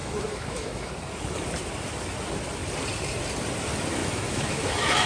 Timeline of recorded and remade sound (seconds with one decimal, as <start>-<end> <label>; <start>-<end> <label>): 0.0-0.9 remade; 0.9-4.0 recorded; 4.0-5.1 remade